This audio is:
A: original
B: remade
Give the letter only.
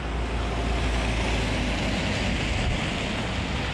A